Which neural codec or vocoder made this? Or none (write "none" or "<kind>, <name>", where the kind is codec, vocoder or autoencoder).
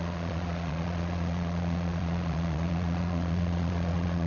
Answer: vocoder, Vocos